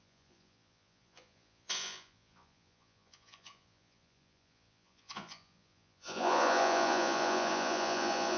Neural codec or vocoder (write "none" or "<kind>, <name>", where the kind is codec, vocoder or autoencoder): vocoder, Vocos